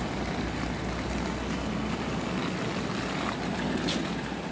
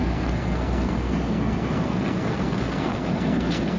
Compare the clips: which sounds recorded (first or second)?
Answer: first